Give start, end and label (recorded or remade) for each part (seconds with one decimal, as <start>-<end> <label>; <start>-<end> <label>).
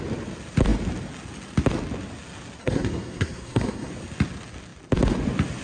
0.0-2.6 recorded; 2.6-3.9 remade; 3.9-5.6 recorded